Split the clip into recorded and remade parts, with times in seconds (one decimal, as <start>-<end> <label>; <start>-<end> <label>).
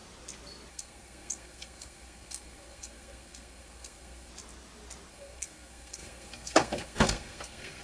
0.0-0.7 recorded; 0.7-4.3 remade; 4.3-5.1 recorded; 5.1-7.8 remade